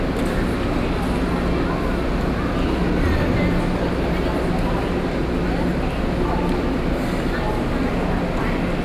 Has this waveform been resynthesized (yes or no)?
no